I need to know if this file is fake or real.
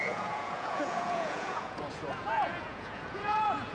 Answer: fake